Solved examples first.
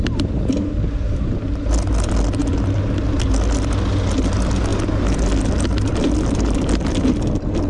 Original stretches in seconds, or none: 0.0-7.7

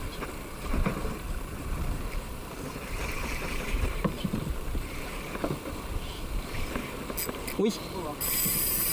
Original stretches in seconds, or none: 1.5-2.7; 5.1-7.9

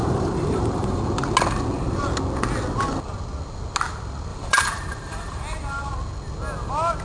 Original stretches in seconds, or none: 1.0-4.3; 5.9-7.0

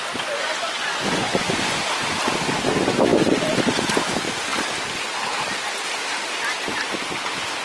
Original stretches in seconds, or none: 1.8-7.6